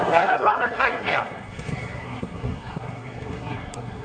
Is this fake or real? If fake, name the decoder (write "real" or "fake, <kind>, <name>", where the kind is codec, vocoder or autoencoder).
fake, codec, SNAC